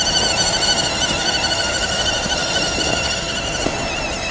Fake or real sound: real